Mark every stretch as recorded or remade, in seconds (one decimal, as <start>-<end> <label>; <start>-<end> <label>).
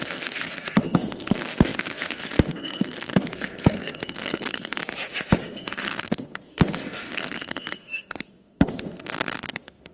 0.0-4.8 remade; 4.8-5.4 recorded; 5.4-9.9 remade